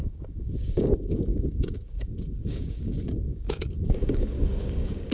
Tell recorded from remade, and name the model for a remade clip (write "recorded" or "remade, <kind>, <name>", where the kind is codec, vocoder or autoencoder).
remade, codec, DAC